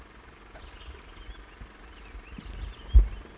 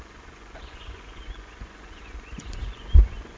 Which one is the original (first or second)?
first